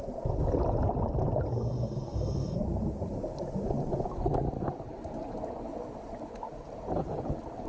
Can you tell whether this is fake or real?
real